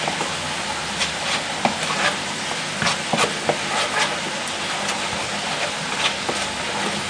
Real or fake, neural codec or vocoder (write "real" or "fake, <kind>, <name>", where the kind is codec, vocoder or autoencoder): real